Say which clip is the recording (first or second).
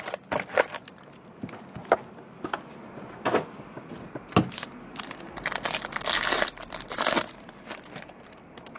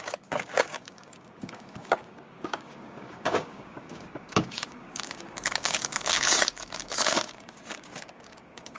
first